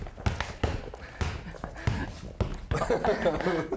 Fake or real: real